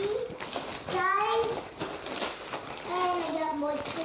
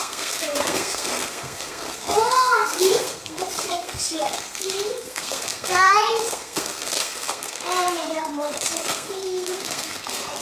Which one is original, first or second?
first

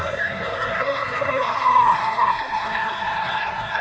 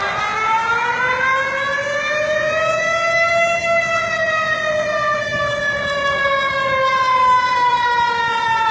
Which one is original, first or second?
second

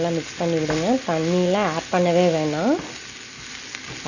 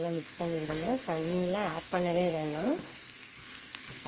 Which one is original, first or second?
first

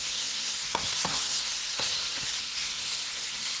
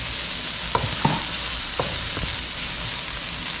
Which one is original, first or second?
second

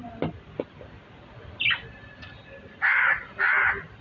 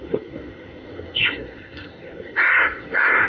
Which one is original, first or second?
first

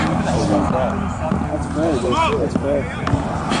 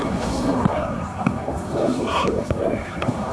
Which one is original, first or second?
first